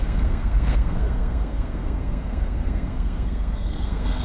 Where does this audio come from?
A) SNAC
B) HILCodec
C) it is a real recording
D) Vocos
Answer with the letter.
A